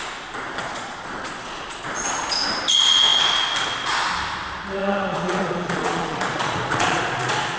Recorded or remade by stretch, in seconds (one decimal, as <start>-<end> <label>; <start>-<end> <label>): 0.0-0.6 recorded; 0.6-2.6 remade; 2.6-4.8 recorded; 4.8-7.6 remade